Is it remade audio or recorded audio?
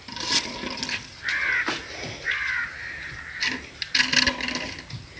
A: recorded